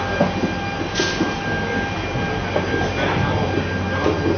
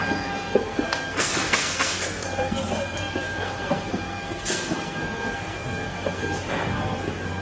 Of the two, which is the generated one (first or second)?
second